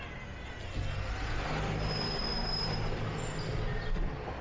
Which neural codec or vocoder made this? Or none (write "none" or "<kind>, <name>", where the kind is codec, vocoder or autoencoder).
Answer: none